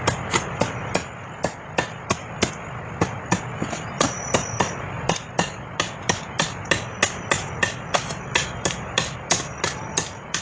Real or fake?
real